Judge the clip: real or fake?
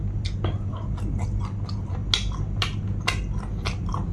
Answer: real